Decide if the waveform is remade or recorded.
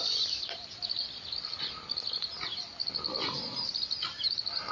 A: recorded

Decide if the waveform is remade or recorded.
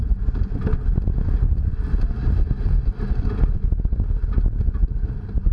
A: recorded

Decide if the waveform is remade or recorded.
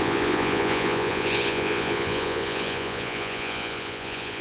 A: remade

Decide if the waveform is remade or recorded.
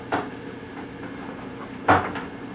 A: recorded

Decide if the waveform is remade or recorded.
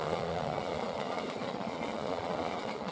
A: remade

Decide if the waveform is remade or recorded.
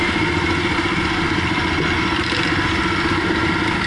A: recorded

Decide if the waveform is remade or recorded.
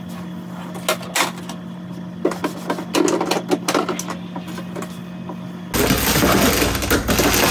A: recorded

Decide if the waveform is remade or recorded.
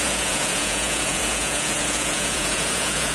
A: remade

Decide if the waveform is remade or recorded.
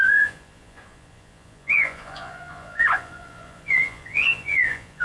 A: remade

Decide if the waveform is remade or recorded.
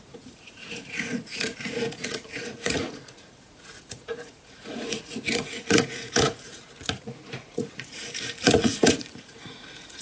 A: remade